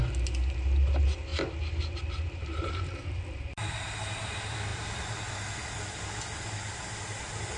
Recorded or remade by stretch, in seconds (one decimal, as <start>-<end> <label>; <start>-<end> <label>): 0.0-7.6 recorded